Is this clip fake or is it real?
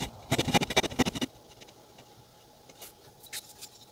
real